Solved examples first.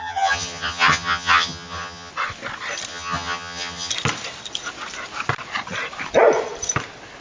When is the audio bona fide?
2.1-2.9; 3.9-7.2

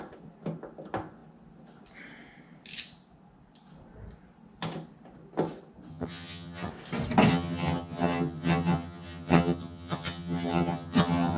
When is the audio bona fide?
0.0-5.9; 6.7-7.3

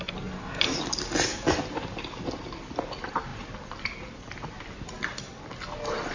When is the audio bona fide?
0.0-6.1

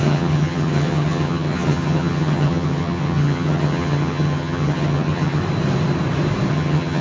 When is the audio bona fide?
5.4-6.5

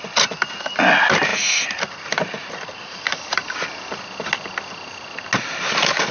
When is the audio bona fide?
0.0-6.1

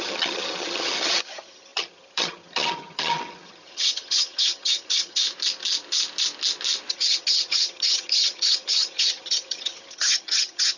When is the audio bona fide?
5.2-6.9